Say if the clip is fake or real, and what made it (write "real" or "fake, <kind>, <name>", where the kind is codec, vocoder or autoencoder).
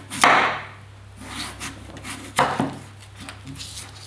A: real